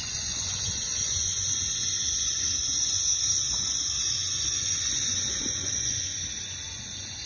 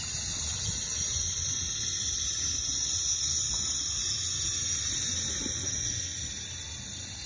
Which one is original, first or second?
second